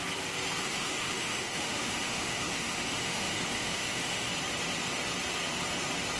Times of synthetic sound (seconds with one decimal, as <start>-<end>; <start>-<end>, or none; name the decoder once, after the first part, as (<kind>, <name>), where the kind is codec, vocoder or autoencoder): 0.6-4.3 (autoencoder, DAC-VAE)

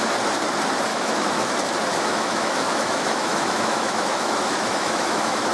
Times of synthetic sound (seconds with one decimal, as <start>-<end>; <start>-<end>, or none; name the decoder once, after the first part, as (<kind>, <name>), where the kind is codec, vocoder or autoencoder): 0.9-1.5 (autoencoder, DAC-VAE); 1.9-5.5

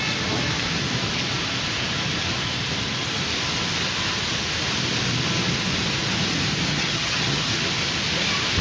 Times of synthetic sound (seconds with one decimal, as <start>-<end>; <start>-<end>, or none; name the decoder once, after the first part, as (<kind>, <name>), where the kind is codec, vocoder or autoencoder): 6.7-7.5 (vocoder, HiFi-GAN)

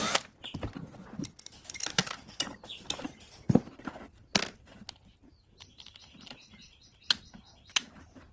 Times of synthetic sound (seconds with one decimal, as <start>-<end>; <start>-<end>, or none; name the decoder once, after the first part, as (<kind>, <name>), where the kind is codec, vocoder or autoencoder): none